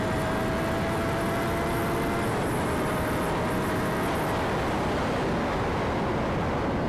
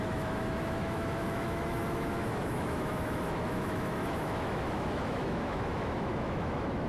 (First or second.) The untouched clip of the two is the first